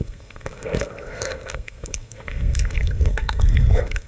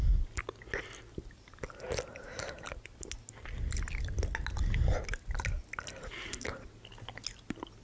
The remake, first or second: first